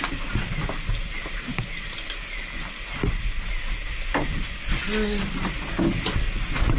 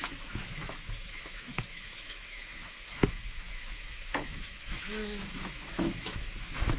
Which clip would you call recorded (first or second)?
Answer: first